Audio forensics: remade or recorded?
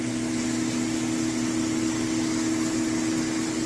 recorded